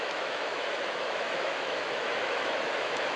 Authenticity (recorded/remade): remade